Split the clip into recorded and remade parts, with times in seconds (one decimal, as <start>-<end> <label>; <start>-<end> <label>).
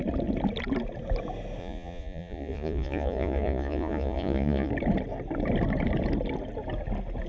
0.0-1.6 recorded; 1.6-4.7 remade; 4.7-7.3 recorded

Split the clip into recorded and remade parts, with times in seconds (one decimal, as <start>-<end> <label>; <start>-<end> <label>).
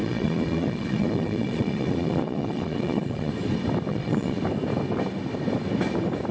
0.0-3.3 remade; 3.3-3.9 recorded; 3.9-4.4 remade; 4.4-6.3 recorded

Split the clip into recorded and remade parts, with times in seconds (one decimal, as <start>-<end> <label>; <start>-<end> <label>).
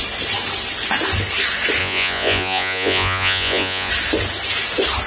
0.0-1.8 recorded; 1.8-3.9 remade; 3.9-5.1 recorded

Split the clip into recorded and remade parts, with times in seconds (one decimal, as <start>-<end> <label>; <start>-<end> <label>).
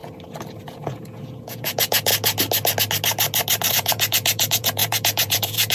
0.0-0.6 recorded; 0.6-2.1 remade; 2.1-3.7 recorded; 3.7-5.7 remade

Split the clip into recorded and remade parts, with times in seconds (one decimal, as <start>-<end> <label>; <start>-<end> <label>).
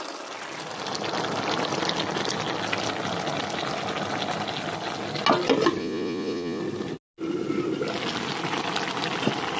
0.0-5.8 recorded; 5.8-6.6 remade; 6.6-9.6 recorded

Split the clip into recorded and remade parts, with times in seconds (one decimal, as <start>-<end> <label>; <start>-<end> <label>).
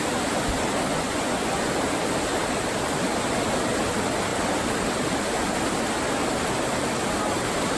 0.0-0.9 recorded; 0.9-1.7 remade; 1.7-7.8 recorded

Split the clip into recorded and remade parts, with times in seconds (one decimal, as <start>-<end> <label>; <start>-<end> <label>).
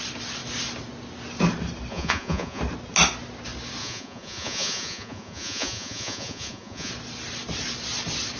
0.0-1.9 recorded; 1.9-2.6 remade; 2.6-3.8 recorded; 3.8-6.9 remade; 6.9-8.4 recorded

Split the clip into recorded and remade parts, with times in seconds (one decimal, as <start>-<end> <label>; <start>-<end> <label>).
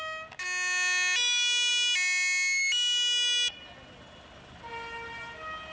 0.0-5.7 recorded